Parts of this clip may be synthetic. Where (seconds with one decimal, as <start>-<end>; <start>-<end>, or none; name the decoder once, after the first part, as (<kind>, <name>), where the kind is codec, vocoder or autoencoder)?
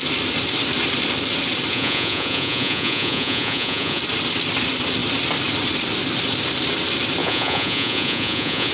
1.7-4.0 (vocoder, Vocos); 7.2-8.7